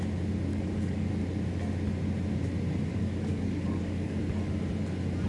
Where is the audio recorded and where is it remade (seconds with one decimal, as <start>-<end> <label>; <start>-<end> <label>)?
0.0-0.5 recorded; 0.5-1.1 remade; 1.1-2.9 recorded; 2.9-4.2 remade; 4.2-5.3 recorded